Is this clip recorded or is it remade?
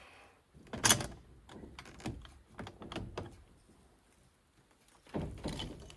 recorded